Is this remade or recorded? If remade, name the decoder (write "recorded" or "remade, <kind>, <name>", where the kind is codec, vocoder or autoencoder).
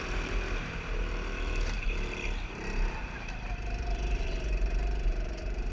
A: remade, vocoder, BigVGAN v2